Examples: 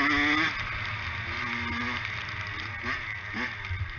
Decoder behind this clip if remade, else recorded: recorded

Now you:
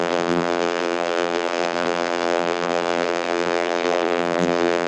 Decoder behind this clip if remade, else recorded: remade, vocoder, BigVGAN v2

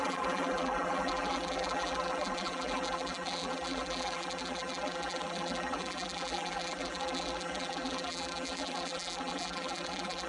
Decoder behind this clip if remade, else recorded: remade, vocoder, BigVGAN v2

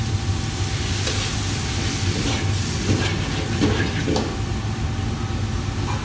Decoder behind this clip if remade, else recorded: recorded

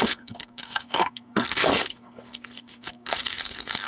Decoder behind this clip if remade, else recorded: remade, codec, SNAC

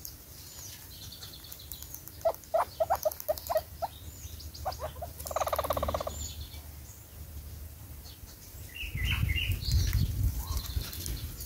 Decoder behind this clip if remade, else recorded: recorded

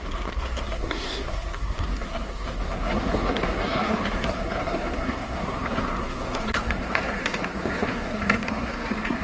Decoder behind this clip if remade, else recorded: remade, codec, SNAC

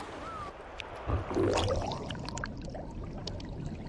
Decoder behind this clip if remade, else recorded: recorded